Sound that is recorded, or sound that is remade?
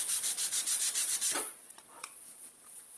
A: remade